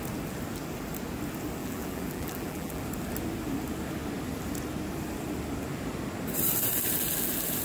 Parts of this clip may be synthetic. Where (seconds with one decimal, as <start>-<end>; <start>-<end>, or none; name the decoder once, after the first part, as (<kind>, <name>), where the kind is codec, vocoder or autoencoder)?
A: 1.6-2.8 (vocoder, BigVGAN v2)